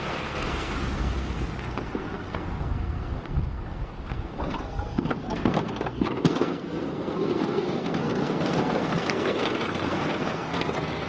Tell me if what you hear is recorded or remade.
remade